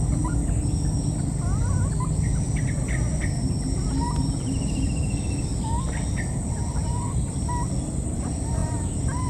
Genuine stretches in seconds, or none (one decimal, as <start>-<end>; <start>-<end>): 0.0-9.3